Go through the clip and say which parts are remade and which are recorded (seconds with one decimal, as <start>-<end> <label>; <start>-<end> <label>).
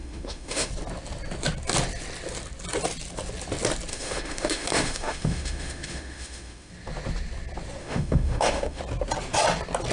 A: 0.0-0.7 remade; 0.7-3.9 recorded; 3.9-6.7 remade; 6.7-7.8 recorded; 7.8-8.8 remade; 8.8-9.9 recorded